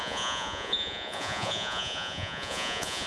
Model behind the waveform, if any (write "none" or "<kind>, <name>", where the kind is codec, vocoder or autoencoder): vocoder, Vocos